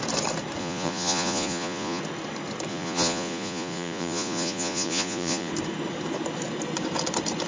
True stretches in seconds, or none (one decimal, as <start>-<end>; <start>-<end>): 0.0-0.6; 2.0-2.7; 5.5-7.5